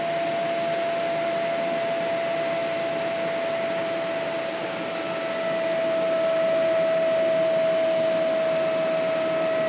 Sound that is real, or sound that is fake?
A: real